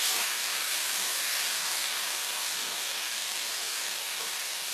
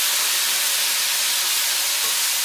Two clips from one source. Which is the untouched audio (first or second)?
second